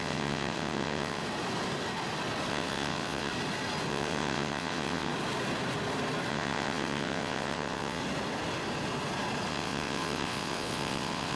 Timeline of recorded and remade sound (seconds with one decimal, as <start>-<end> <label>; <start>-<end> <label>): 0.0-1.2 remade; 1.2-2.5 recorded; 2.5-3.3 remade; 3.3-3.9 recorded; 3.9-5.1 remade; 5.1-6.3 recorded; 6.3-8.0 remade; 8.0-9.5 recorded; 9.5-11.4 remade